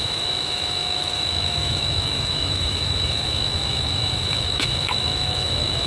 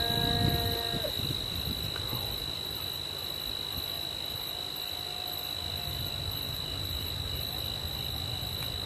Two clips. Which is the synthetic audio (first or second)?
first